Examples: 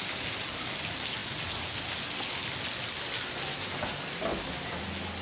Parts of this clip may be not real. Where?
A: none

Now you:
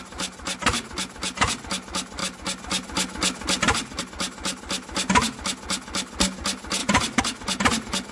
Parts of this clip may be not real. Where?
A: 6.8-8.1 (vocoder, BigVGAN v2)

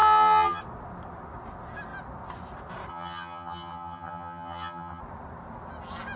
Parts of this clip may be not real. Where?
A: 0.0-0.6 (vocoder, HiFi-GAN); 2.9-5.0

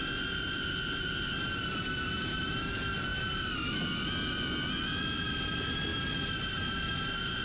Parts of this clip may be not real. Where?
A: none

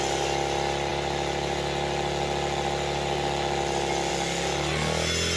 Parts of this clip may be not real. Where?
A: none